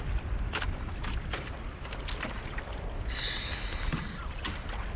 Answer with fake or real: real